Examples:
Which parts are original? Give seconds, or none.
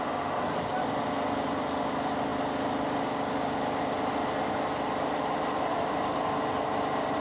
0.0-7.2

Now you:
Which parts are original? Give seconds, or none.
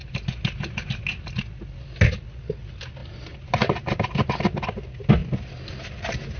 0.0-6.4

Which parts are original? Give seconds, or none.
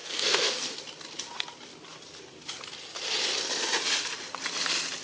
0.7-5.0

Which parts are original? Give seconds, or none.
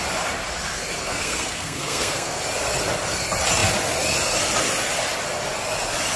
0.0-1.0; 2.4-6.2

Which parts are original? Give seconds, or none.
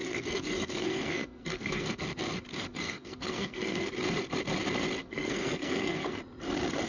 2.0-2.5; 3.9-5.0; 6.2-6.9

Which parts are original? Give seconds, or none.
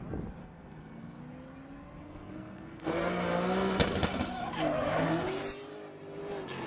0.0-0.4; 1.2-2.0; 3.1-6.7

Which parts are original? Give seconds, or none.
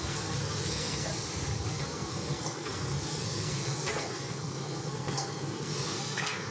1.1-1.7